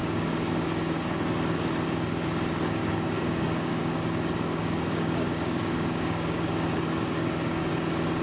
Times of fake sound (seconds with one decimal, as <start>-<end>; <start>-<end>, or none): 0.0-1.7; 2.8-7.7